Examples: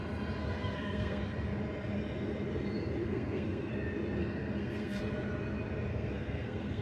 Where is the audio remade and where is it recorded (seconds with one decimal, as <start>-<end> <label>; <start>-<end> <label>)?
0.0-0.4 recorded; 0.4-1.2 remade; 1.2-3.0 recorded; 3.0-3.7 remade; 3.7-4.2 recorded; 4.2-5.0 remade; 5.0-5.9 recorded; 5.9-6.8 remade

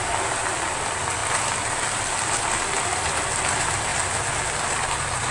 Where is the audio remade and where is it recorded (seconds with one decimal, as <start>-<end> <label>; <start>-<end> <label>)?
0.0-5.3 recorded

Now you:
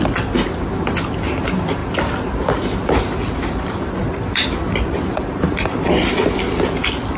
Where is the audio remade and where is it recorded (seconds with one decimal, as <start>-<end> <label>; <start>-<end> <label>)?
0.0-7.2 recorded

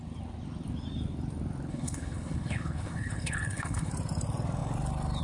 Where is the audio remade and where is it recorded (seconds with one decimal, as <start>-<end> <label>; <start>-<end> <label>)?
0.0-1.7 recorded; 1.7-3.9 remade; 3.9-5.2 recorded